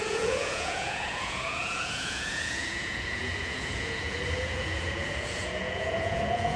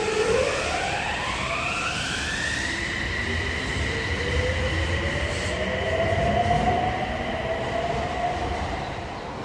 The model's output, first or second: first